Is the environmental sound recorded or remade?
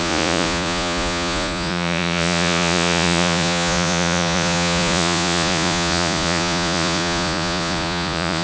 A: remade